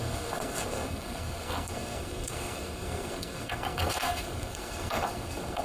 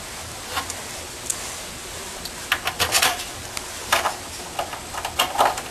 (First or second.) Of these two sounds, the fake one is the first